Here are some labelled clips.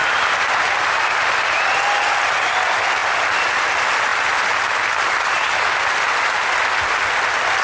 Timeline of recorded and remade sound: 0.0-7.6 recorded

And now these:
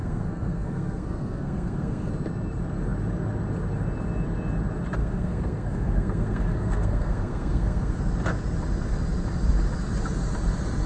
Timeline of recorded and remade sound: 0.0-2.1 remade; 2.1-5.0 recorded; 5.0-8.0 remade; 8.0-10.9 recorded

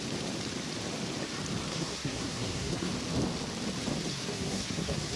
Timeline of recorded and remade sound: 0.0-1.7 recorded; 1.7-2.9 remade; 2.9-4.1 recorded; 4.1-5.2 remade

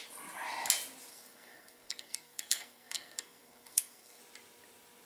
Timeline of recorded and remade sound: 0.0-1.1 recorded; 1.1-4.2 remade; 4.2-5.1 recorded

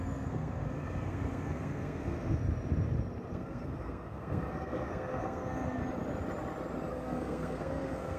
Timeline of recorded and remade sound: 0.0-2.4 remade; 2.4-3.3 recorded; 3.3-5.8 remade; 5.8-6.9 recorded; 6.9-8.2 remade